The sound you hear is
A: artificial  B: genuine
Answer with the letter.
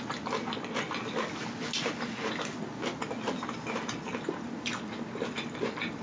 B